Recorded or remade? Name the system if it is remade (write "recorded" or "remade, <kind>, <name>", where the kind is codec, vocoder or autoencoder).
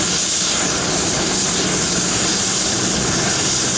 remade, vocoder, BigVGAN v2